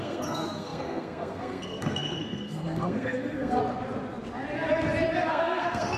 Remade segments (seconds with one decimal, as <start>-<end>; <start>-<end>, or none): 0.0-3.6; 5.3-6.0